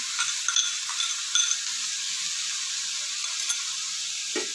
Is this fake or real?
real